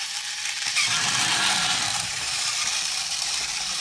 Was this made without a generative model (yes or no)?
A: no